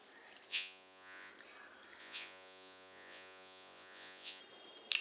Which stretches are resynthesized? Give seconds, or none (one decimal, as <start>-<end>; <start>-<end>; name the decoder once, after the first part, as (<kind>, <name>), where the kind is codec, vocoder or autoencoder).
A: 0.5-1.3 (vocoder, Vocos); 2.0-4.4